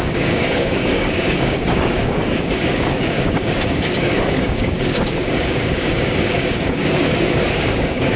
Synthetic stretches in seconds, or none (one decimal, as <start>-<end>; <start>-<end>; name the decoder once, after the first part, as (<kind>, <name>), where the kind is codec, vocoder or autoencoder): 0.0-8.2 (codec, DAC)